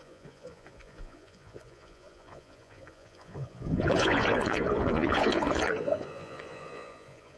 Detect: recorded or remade remade